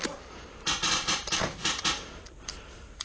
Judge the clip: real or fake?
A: fake